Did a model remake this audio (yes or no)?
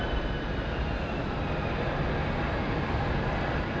no